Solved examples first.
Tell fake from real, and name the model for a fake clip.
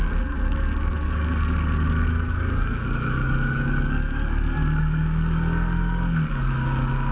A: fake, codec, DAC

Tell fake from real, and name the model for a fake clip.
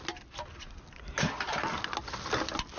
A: real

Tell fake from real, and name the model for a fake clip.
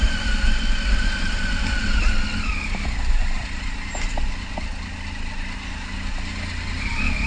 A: real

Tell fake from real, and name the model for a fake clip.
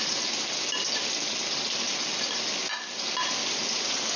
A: real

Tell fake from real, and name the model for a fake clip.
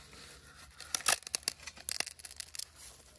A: real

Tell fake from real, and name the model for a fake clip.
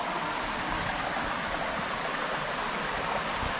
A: real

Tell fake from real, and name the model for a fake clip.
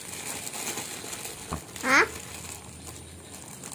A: real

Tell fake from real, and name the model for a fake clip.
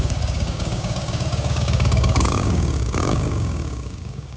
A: fake, codec, DAC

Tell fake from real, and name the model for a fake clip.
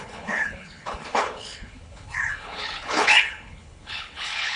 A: fake, codec, HILCodec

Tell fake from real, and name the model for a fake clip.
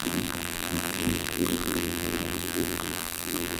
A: fake, vocoder, BigVGAN v2